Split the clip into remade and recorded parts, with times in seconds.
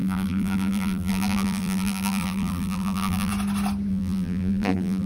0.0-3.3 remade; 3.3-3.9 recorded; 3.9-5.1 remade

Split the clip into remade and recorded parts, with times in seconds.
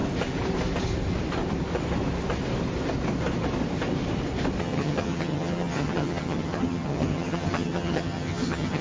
0.0-4.6 recorded; 4.6-8.8 remade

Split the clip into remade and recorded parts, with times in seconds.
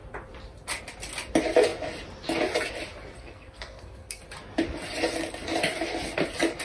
0.0-3.2 recorded; 3.2-4.2 remade; 4.2-6.6 recorded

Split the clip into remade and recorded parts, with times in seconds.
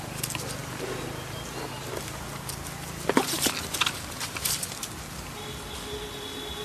0.0-6.6 recorded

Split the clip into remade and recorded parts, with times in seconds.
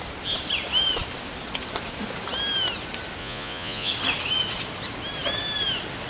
0.0-3.2 recorded; 3.2-3.9 remade; 3.9-6.1 recorded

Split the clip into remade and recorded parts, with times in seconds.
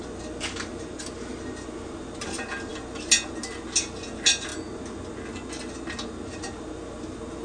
0.0-7.4 recorded